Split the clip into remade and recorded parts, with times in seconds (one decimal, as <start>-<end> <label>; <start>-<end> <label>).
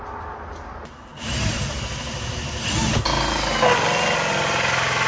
0.0-5.1 recorded